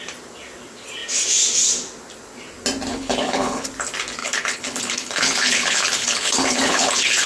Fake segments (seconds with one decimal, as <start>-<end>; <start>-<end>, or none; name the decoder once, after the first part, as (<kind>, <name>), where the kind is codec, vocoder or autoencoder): 2.9-3.7 (codec, HILCodec); 4.2-7.3